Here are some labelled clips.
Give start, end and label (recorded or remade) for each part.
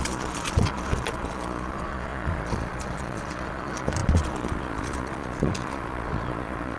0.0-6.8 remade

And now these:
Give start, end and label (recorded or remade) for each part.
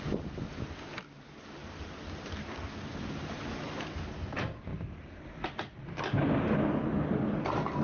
0.0-7.8 recorded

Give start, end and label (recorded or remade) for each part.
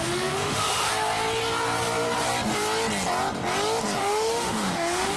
0.0-0.9 remade; 0.9-4.0 recorded; 4.0-5.2 remade